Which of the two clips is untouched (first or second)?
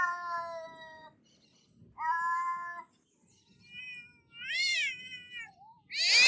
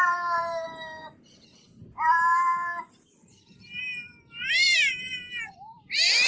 first